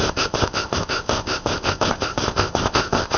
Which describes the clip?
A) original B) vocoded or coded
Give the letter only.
B